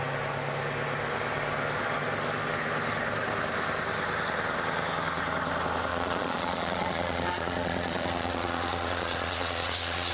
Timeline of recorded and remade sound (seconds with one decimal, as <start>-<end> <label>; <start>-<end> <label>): 0.0-5.9 recorded; 5.9-10.1 remade